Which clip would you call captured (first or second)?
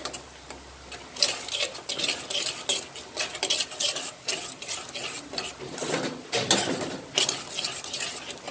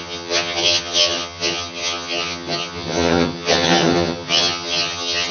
first